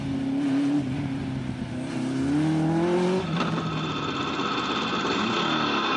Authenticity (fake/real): real